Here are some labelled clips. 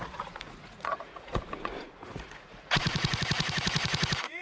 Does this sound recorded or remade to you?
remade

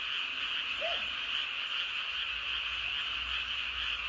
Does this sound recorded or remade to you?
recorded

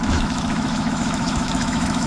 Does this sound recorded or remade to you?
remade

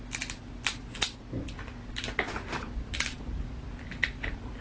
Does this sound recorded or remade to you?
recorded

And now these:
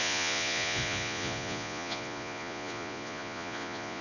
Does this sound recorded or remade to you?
remade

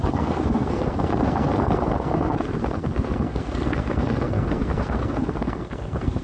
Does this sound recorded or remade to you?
remade